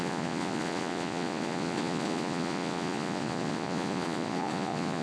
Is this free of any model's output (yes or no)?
no